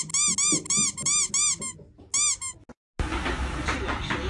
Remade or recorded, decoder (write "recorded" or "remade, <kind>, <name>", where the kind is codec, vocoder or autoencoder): recorded